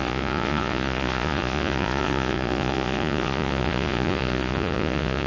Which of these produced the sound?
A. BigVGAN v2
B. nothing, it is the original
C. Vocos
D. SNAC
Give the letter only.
C